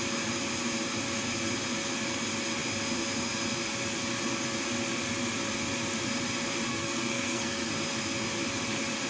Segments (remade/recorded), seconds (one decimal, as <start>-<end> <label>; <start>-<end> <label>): 0.0-6.7 recorded; 6.7-7.7 remade; 7.7-9.1 recorded